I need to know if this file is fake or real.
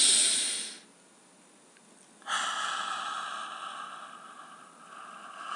real